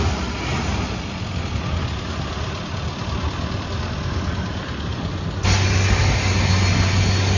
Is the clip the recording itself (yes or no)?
yes